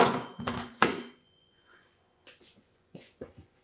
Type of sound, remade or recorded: remade